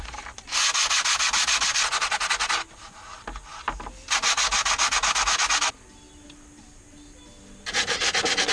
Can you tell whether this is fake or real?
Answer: real